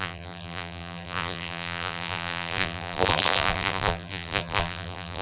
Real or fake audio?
fake